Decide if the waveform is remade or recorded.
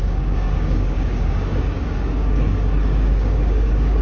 remade